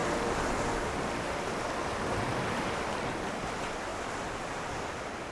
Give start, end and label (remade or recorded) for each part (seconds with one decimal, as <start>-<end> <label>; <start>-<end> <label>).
0.0-0.5 remade; 0.5-3.9 recorded; 3.9-5.3 remade

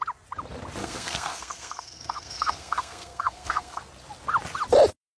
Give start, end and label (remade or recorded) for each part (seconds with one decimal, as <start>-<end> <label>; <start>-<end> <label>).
0.0-0.8 recorded; 0.8-3.8 remade; 3.8-5.2 recorded

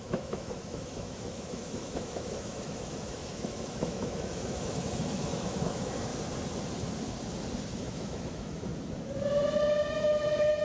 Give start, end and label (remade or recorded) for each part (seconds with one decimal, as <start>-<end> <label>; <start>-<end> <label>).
0.0-6.1 remade; 6.1-7.8 recorded; 7.8-8.7 remade; 8.7-9.9 recorded; 9.9-10.6 remade

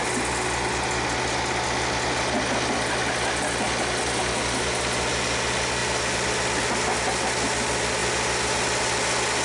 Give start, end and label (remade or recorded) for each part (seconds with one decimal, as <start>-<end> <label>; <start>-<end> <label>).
0.0-9.4 recorded

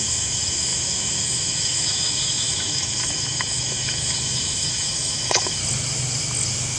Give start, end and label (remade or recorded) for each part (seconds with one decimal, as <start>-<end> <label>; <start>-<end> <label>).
0.0-5.6 remade; 5.6-6.8 recorded

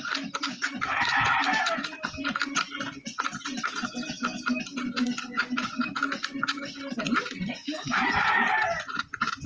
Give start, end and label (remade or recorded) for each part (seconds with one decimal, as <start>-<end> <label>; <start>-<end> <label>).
0.0-7.6 recorded; 7.6-8.1 remade; 8.1-9.5 recorded

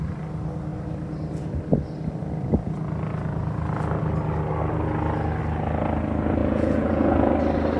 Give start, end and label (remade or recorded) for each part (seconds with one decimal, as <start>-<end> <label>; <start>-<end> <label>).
0.0-6.4 recorded; 6.4-7.3 remade; 7.3-7.8 recorded

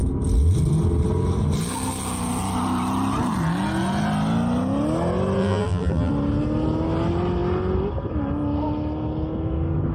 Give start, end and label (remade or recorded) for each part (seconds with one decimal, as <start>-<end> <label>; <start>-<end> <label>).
0.0-5.4 recorded; 5.4-6.1 remade; 6.1-9.9 recorded